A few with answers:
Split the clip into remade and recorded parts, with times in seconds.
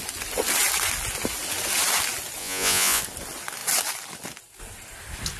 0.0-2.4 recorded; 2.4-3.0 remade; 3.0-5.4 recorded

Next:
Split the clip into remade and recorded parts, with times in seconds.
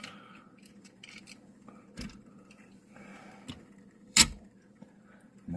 0.0-3.1 remade; 3.1-3.8 recorded; 3.8-5.6 remade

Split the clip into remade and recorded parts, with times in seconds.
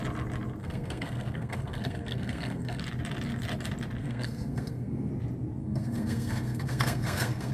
0.0-0.6 recorded; 0.6-2.8 remade; 2.8-4.0 recorded; 4.0-5.1 remade; 5.1-5.6 recorded; 5.6-7.5 remade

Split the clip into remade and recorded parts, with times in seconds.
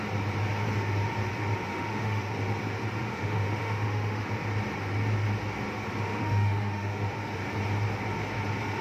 0.0-1.7 recorded; 1.7-2.3 remade; 2.3-3.1 recorded; 3.1-4.3 remade; 4.3-6.1 recorded; 6.1-7.1 remade; 7.1-8.8 recorded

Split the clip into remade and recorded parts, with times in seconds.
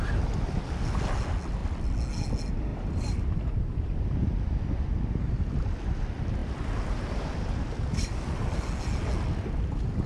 0.0-2.7 recorded; 2.7-4.0 remade; 4.0-10.1 recorded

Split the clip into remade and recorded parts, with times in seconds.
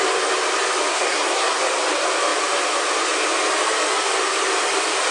0.0-0.9 recorded; 0.9-1.6 remade; 1.6-5.1 recorded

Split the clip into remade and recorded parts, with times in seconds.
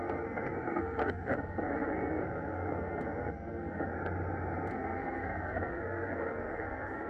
0.0-3.9 remade; 3.9-4.7 recorded; 4.7-7.1 remade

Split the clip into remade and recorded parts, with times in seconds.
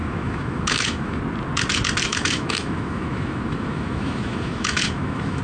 0.0-1.2 remade; 1.2-2.1 recorded; 2.1-5.4 remade